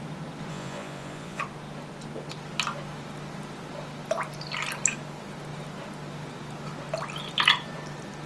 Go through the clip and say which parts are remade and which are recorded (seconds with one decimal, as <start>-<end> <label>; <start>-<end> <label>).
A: 0.0-0.5 recorded; 0.5-1.4 remade; 1.4-8.3 recorded